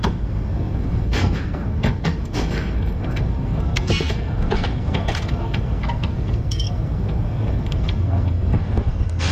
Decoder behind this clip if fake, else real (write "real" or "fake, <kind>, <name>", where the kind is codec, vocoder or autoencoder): fake, codec, SNAC